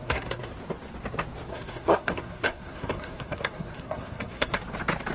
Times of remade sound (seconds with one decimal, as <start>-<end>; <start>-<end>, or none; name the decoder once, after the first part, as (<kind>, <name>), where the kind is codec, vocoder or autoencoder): 0.0-0.5 (codec, SNAC); 1.5-4.6